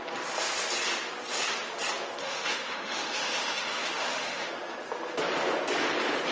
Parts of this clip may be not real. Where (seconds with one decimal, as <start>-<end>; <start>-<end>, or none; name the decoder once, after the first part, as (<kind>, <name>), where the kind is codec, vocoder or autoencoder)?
2.2-4.5 (autoencoder, DAC-VAE)